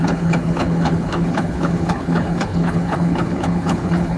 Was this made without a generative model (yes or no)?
no